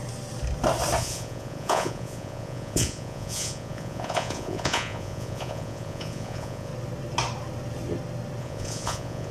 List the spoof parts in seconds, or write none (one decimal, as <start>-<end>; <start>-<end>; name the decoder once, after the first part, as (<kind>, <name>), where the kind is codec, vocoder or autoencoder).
1.0-6.7 (vocoder, Vocos); 8.4-9.3